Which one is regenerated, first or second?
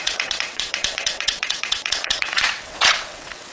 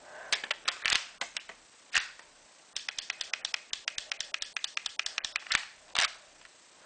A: first